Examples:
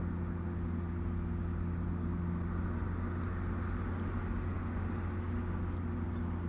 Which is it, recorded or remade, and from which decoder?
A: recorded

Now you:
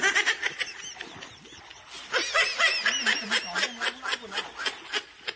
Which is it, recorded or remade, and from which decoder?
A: recorded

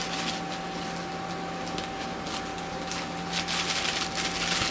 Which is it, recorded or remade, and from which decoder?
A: recorded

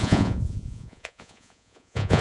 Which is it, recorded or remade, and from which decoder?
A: remade, vocoder, Vocos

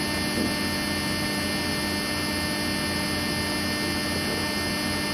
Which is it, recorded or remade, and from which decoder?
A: recorded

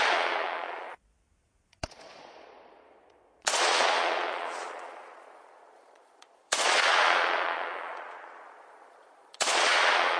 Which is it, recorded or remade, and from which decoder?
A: remade, vocoder, Vocos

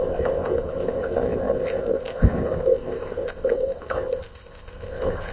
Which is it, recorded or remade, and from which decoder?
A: remade, codec, ZipCodec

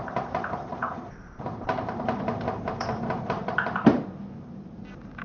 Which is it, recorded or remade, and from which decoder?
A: remade, vocoder, BigVGAN v2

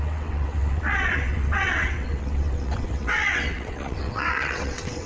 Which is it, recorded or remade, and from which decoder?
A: remade, vocoder, WaveNeXt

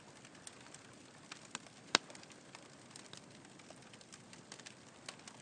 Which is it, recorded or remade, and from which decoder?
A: recorded